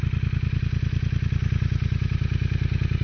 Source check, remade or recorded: recorded